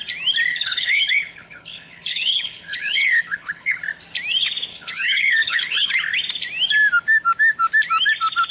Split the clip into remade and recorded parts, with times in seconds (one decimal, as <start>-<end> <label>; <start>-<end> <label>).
0.0-0.5 recorded; 0.5-3.8 remade; 3.8-4.7 recorded; 4.7-5.9 remade; 5.9-8.5 recorded